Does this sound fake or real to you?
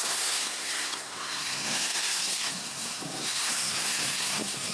fake